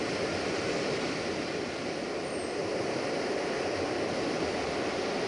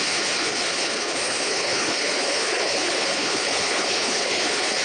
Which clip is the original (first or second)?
first